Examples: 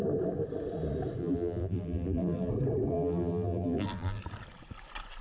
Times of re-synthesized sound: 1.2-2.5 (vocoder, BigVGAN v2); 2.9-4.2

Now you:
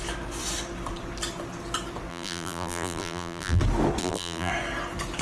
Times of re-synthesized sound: 2.1-3.6 (vocoder, BigVGAN v2); 4.0-4.5

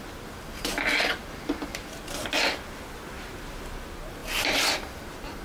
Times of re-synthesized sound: 4.2-5.4 (vocoder, BigVGAN v2)

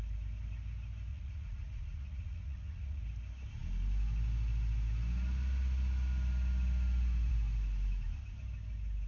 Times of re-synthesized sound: 1.1-3.0 (vocoder, Vocos)